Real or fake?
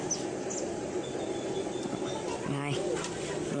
real